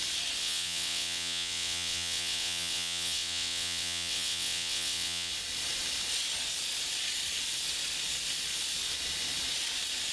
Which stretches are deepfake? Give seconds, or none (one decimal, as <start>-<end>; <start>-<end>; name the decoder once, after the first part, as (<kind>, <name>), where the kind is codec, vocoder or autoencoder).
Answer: 0.4-5.3 (vocoder, WaveNeXt)